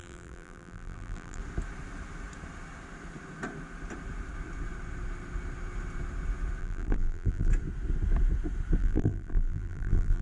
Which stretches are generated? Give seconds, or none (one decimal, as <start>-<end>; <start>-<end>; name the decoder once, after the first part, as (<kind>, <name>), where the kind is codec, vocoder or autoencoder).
0.0-1.4 (vocoder, BigVGAN v2); 6.6-7.5; 8.8-10.2